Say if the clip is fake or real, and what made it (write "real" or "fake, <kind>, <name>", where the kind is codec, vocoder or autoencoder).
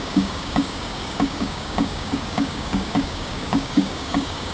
fake, codec, DAC